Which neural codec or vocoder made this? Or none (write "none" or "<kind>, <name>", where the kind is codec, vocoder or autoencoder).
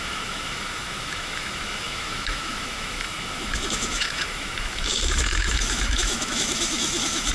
autoencoder, DAC-VAE